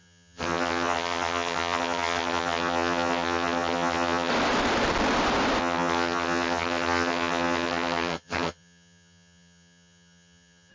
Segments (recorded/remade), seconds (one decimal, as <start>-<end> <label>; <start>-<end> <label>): 0.0-4.3 remade; 4.3-5.6 recorded; 5.6-10.7 remade

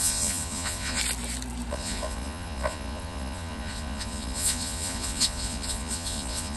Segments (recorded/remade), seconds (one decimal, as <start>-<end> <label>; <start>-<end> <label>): 0.0-1.0 remade; 1.0-1.7 recorded; 1.7-6.6 remade

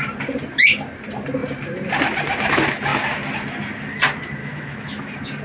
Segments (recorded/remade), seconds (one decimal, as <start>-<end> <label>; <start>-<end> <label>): 0.0-4.4 recorded; 4.4-5.0 remade; 5.0-5.4 recorded

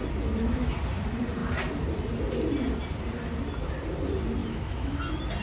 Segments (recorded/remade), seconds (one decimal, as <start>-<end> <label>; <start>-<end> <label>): 0.0-0.7 remade; 0.7-4.4 recorded; 4.4-5.0 remade; 5.0-5.4 recorded

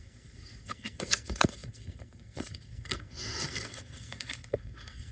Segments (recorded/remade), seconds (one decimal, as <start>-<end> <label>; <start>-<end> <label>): 0.0-5.1 remade